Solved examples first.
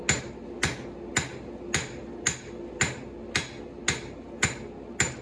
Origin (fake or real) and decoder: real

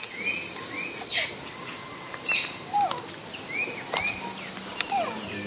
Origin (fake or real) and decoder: real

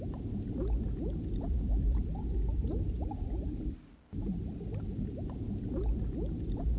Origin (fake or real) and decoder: fake, vocoder, BigVGAN v2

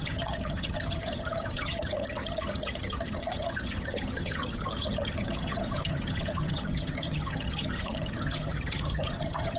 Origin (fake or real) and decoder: fake, vocoder, HiFi-GAN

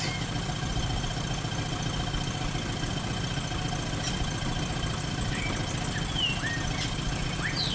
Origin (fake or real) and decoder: real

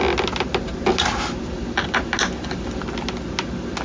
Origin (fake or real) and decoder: real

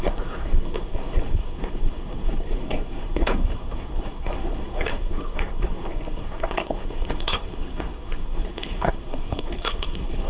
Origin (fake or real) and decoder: fake, codec, SNAC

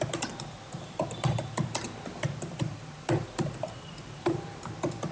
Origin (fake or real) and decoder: fake, vocoder, BigVGAN v2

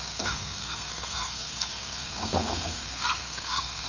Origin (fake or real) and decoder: fake, codec, SNAC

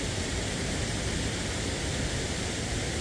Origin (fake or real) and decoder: real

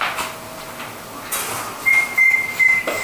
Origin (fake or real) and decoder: real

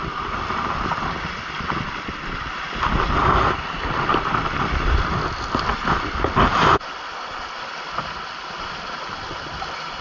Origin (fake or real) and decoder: real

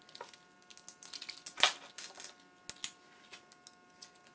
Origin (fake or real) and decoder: real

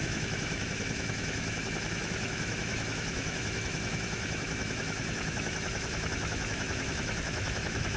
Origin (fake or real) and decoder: fake, autoencoder, DAC-VAE